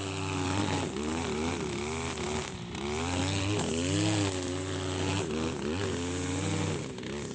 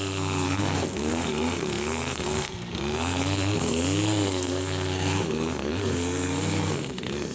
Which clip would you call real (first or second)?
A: first